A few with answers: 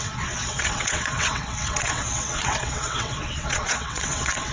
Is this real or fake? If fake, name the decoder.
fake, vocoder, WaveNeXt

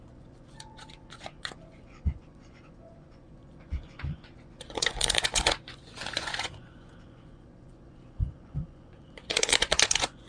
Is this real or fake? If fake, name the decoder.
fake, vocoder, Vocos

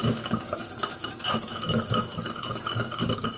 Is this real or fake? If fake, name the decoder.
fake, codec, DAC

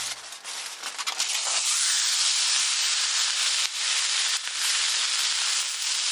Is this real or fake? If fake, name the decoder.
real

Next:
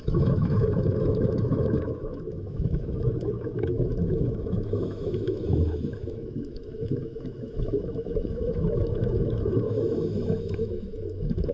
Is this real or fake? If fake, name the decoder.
fake, autoencoder, DAC-VAE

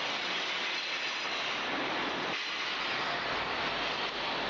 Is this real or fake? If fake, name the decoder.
real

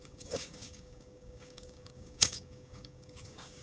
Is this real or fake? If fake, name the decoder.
fake, codec, DAC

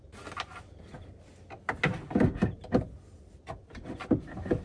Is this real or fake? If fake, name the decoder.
real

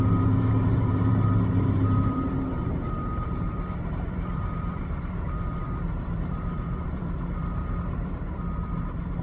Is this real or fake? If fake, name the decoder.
fake, vocoder, BigVGAN v2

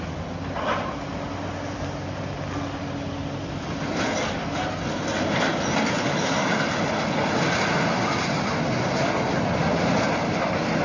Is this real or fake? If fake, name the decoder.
real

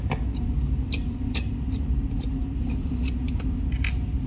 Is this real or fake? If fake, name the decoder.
real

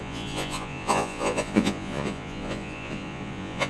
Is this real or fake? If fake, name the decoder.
fake, vocoder, Vocos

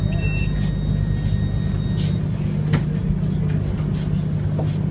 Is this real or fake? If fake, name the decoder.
real